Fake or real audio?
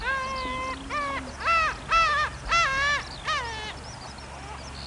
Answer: real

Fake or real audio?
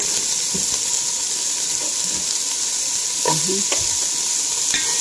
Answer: real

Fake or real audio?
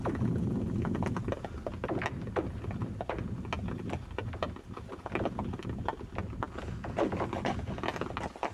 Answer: real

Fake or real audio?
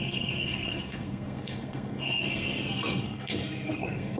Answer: fake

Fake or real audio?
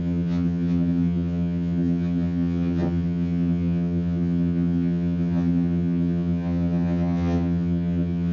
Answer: fake